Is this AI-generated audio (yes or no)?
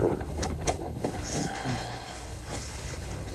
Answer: yes